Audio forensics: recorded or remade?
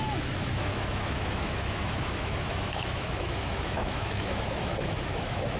remade